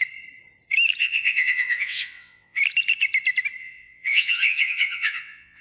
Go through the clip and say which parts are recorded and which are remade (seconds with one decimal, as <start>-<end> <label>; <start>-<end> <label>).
0.0-1.0 recorded; 1.0-2.6 remade; 2.6-3.6 recorded; 3.6-5.6 remade